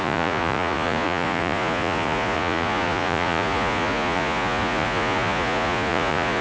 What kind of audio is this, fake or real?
fake